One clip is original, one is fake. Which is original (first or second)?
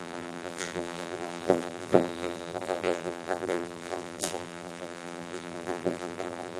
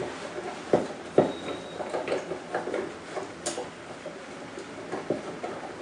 second